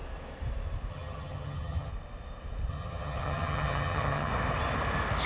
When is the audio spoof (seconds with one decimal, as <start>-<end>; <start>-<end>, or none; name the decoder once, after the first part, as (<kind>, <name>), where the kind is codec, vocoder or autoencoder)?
0.9-1.9 (vocoder, HiFi-GAN); 2.7-4.3